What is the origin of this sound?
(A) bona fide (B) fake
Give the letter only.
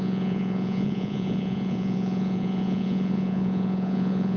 B